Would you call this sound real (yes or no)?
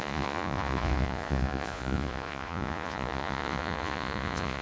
no